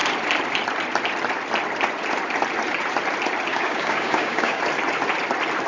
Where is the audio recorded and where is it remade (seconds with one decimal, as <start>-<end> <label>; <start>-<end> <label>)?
0.0-3.5 recorded; 3.5-4.6 remade; 4.6-5.7 recorded